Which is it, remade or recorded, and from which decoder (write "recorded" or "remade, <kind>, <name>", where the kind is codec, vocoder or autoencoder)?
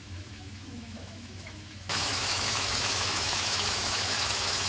remade, autoencoder, DAC-VAE